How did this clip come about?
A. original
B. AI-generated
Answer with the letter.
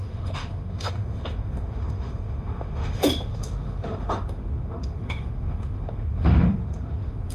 B